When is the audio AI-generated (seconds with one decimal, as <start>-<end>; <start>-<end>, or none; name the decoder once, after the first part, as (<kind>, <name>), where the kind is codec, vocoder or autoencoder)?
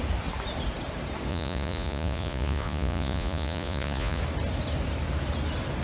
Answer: 1.3-4.2 (vocoder, Vocos)